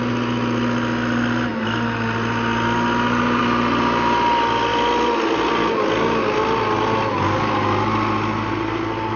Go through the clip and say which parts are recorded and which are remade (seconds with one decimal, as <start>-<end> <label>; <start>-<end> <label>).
0.0-9.2 recorded